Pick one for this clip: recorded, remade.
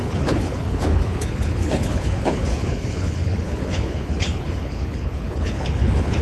remade